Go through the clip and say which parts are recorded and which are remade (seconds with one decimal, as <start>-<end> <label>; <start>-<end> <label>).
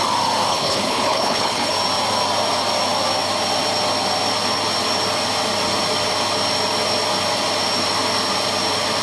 0.0-0.5 recorded; 0.5-1.7 remade; 1.7-9.0 recorded